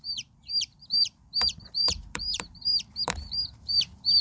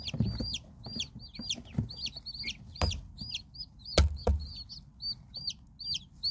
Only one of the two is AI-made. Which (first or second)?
first